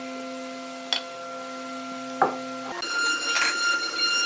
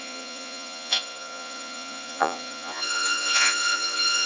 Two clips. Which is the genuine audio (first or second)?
first